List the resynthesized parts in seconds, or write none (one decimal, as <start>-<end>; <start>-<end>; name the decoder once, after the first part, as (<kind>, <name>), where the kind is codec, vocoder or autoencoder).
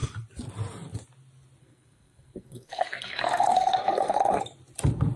1.6-4.4 (codec, SNAC)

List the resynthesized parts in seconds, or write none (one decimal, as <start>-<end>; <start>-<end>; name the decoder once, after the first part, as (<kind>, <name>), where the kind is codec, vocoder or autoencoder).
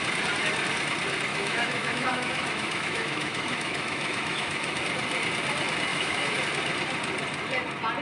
1.3-4.8 (autoencoder, DAC-VAE); 5.9-6.4